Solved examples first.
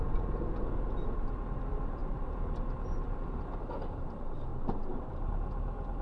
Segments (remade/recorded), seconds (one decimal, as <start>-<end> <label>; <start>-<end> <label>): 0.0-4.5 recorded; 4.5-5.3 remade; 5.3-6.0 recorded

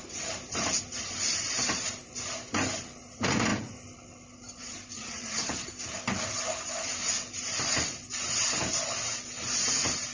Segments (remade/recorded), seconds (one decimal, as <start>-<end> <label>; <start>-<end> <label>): 0.0-10.1 recorded

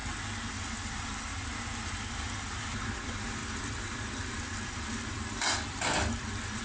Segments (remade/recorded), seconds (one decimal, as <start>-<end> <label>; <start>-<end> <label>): 0.0-0.5 recorded; 0.5-1.3 remade; 1.3-2.1 recorded; 2.1-6.6 remade

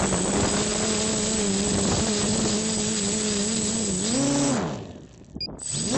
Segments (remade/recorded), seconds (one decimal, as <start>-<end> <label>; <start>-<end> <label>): 0.0-0.7 remade; 0.7-1.4 recorded; 1.4-2.3 remade; 2.3-6.0 recorded

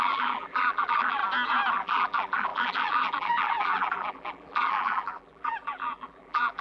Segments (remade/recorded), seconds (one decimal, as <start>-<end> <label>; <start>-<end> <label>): 0.0-1.2 remade; 1.2-1.7 recorded; 1.7-6.6 remade

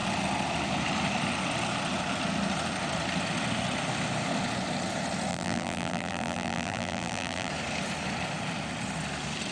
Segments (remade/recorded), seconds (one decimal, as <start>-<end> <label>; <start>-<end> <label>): 0.0-5.3 recorded; 5.3-7.5 remade; 7.5-9.5 recorded